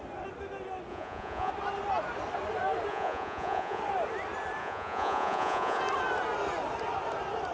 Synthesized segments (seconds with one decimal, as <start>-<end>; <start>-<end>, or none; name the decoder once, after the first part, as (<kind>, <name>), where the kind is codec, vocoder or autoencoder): 0.9-1.5 (vocoder, Vocos); 2.9-3.8; 4.6-5.8